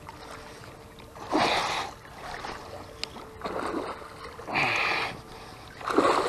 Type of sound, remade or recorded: recorded